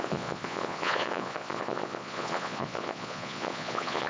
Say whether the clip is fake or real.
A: fake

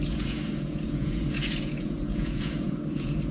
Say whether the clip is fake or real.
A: fake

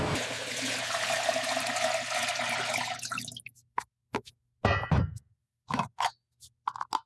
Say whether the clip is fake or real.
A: real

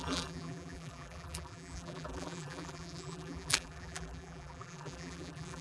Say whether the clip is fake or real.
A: fake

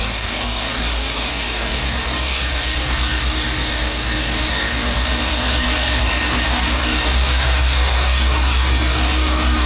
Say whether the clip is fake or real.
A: fake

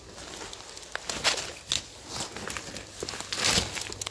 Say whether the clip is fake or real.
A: real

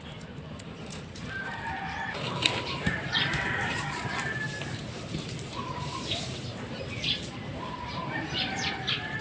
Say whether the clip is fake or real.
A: fake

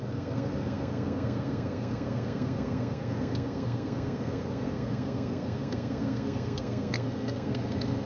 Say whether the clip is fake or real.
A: fake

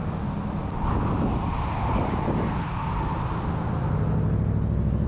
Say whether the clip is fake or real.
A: real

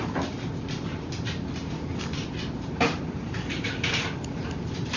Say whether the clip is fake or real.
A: real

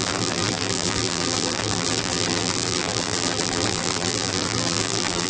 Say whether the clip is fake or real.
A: fake